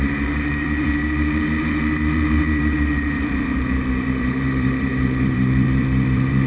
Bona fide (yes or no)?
no